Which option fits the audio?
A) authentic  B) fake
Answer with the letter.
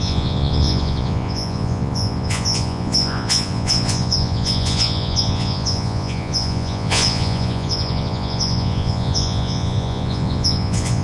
B